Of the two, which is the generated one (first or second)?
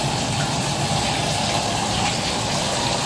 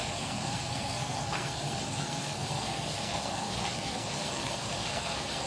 second